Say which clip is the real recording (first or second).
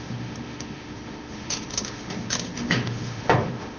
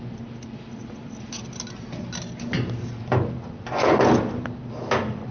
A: second